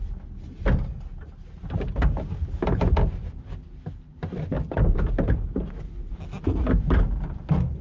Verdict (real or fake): real